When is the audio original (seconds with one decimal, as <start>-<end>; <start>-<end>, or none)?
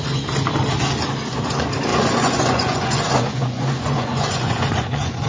0.0-1.9